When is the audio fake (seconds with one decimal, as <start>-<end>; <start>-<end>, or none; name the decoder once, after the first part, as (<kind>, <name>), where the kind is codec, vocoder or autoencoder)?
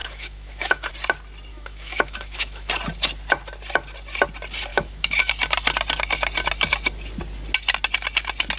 0.0-0.9 (autoencoder, DAC-VAE); 1.5-2.7; 4.7-5.3